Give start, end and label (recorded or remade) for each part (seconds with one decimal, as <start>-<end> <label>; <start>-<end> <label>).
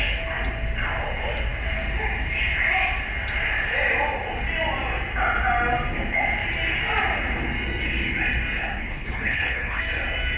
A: 0.0-8.9 recorded; 8.9-9.8 remade; 9.8-10.4 recorded